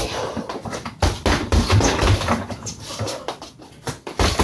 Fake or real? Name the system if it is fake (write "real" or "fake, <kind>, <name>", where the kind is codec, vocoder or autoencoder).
real